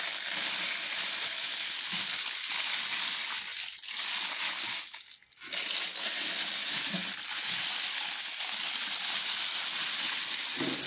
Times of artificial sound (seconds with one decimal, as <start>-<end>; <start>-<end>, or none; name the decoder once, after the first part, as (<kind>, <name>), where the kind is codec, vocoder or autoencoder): none